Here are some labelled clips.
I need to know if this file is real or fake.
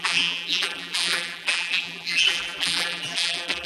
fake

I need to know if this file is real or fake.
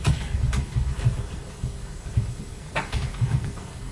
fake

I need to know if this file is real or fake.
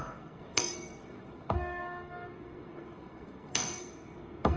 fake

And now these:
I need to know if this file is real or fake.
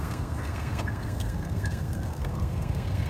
fake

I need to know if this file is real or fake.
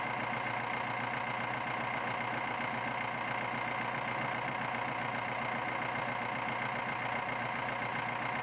real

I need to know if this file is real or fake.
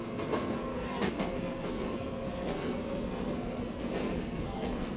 fake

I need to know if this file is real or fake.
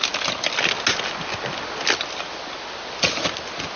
real